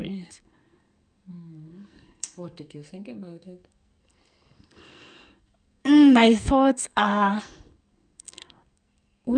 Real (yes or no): no